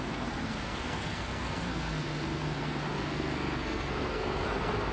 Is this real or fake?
fake